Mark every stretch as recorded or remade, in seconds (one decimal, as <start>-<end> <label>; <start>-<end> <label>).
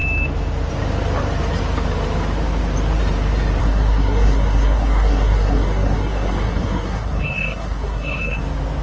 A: 0.0-3.6 recorded; 3.6-8.4 remade; 8.4-8.8 recorded